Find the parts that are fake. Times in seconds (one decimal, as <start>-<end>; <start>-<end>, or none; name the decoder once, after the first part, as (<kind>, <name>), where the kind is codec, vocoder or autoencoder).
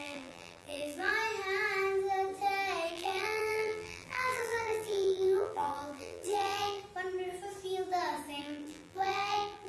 0.0-1.1 (vocoder, BigVGAN v2); 2.9-6.8; 8.4-9.7